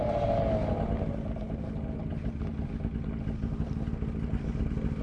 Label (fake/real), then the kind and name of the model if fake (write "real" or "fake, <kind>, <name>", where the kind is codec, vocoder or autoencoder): real